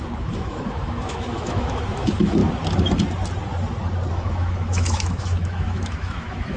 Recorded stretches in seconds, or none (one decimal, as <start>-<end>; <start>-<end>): 2.4-4.1